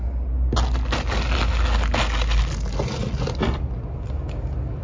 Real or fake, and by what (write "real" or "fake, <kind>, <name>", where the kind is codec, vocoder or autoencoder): real